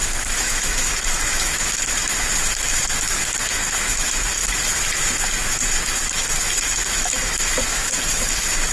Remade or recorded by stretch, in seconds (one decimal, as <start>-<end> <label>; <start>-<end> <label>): 0.0-8.7 remade

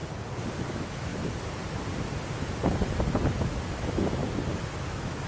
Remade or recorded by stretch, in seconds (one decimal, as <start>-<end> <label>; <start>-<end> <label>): 0.0-0.7 recorded; 0.7-1.1 remade; 1.1-3.7 recorded; 3.7-4.2 remade; 4.2-4.7 recorded; 4.7-5.3 remade

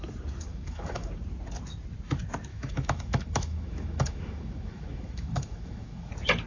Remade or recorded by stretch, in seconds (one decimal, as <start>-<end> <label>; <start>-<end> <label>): 0.0-0.5 recorded; 0.5-1.1 remade; 1.1-2.5 recorded; 2.5-6.1 remade; 6.1-6.5 recorded

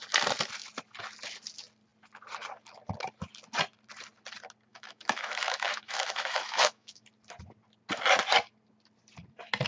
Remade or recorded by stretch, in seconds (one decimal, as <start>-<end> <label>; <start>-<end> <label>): 0.0-4.7 recorded; 4.7-7.0 remade; 7.0-9.7 recorded